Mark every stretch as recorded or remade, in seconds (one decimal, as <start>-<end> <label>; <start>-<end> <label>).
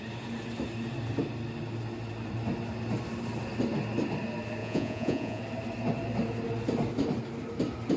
0.0-4.6 recorded; 4.6-5.4 remade; 5.4-8.0 recorded